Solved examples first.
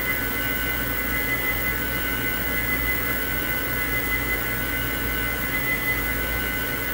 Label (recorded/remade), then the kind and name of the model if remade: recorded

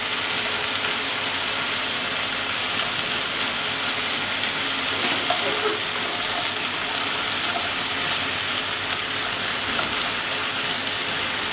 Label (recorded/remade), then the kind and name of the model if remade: recorded